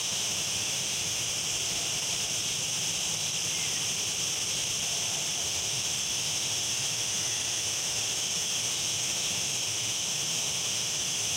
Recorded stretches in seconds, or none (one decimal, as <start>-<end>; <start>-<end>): 1.2-5.4